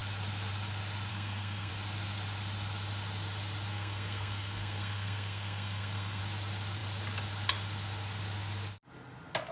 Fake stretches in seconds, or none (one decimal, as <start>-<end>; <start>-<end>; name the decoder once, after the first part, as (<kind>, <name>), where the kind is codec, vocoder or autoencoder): 1.1-1.7 (codec, SNAC); 3.7-6.2